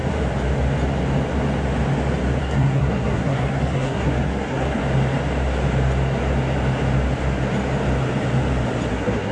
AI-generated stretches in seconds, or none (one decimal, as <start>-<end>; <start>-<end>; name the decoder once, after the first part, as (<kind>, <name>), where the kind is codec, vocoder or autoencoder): 2.4-4.8 (codec, SNAC); 8.9-9.3